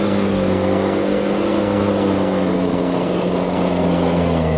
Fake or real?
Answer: fake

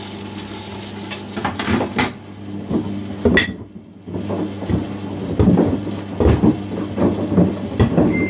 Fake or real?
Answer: real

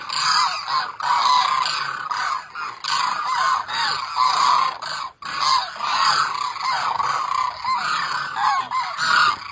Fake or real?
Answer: real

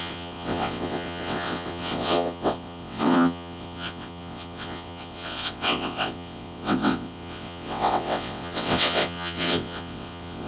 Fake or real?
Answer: fake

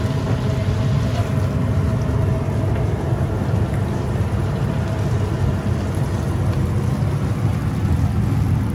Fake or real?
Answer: real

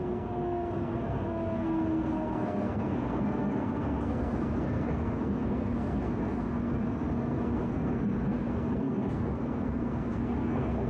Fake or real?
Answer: fake